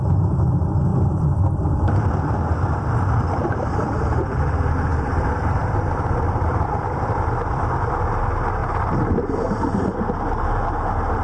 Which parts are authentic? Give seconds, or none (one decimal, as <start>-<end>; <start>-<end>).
0.0-0.9; 4.4-4.9; 7.3-11.2